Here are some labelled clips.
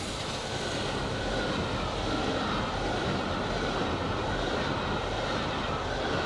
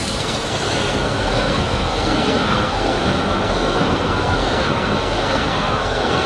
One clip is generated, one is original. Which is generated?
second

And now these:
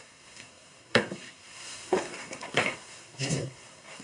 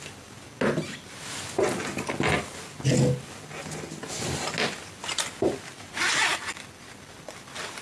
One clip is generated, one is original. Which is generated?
first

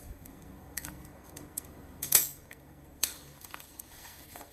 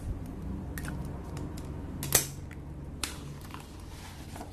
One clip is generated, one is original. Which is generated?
first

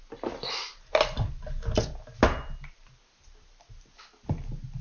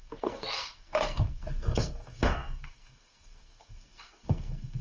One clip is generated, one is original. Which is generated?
second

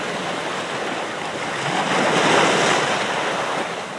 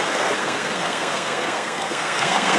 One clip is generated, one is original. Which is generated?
second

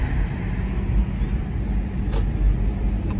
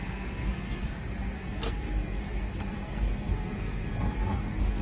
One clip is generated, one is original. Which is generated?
second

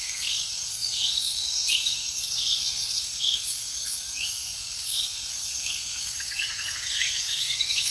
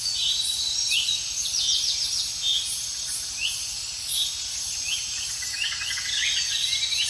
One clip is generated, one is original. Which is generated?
first